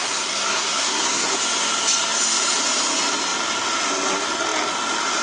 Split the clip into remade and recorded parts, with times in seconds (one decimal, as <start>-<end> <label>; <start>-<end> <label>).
0.0-1.3 remade; 1.3-5.2 recorded